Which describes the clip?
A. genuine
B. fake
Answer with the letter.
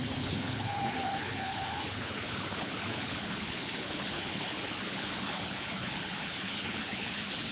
B